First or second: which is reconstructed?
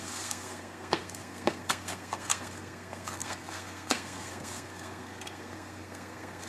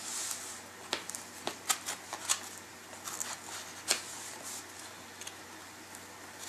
first